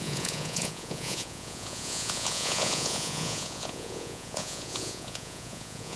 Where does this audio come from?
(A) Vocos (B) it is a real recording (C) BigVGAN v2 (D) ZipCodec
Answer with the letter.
A